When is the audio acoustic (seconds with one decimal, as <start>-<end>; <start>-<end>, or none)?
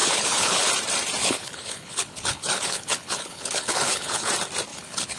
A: 0.7-1.2; 4.3-4.7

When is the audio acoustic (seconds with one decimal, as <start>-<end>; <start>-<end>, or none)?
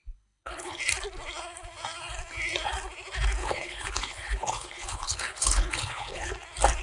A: 0.8-3.4; 6.3-6.8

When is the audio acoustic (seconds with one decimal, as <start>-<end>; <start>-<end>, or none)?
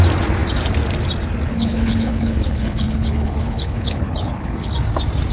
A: 0.0-1.5; 4.7-5.3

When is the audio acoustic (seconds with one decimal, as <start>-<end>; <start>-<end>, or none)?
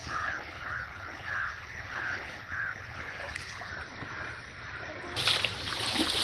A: 3.7-6.2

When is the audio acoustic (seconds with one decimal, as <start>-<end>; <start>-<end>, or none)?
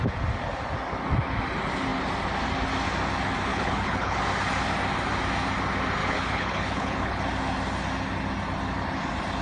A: 0.0-3.5; 4.2-6.0; 7.2-9.4